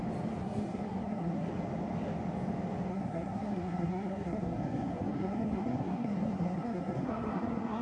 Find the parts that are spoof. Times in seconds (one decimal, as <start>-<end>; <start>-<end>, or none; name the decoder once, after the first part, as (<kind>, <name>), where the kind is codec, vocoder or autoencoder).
0.4-1.5 (codec, SNAC); 2.9-7.8